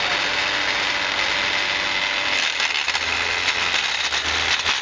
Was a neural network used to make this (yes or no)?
no